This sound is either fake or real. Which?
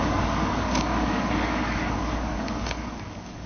fake